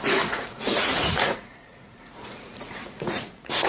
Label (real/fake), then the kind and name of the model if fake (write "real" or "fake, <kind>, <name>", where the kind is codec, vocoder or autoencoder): fake, vocoder, Vocos